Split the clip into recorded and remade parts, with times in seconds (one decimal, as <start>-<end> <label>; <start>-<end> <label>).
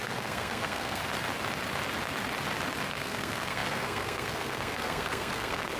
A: 0.0-1.0 remade; 1.0-2.9 recorded; 2.9-5.8 remade